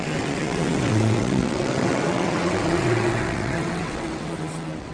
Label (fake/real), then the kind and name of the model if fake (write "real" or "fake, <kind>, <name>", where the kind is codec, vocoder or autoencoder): fake, vocoder, WaveNeXt